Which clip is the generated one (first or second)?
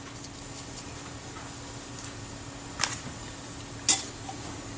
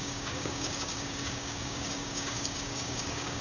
second